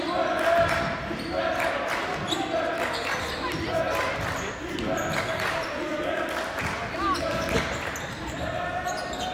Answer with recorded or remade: recorded